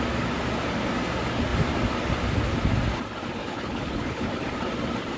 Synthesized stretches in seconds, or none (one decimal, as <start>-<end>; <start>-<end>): 3.4-4.3